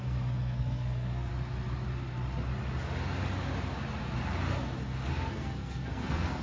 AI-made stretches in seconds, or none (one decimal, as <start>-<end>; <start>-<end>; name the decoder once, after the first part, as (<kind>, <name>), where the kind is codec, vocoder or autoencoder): 0.0-1.3 (codec, SNAC); 5.1-6.4